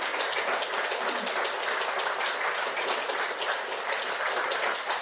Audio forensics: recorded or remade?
recorded